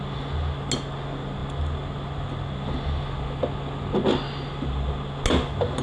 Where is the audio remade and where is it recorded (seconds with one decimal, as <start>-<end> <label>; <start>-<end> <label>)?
0.0-5.8 recorded